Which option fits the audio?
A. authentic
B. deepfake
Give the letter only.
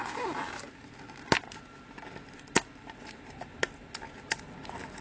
A